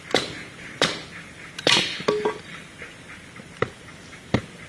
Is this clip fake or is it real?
real